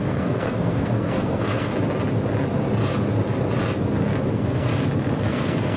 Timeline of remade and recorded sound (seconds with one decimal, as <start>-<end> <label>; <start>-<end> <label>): 0.0-1.7 remade; 1.7-4.3 recorded; 4.3-4.7 remade; 4.7-5.3 recorded; 5.3-5.8 remade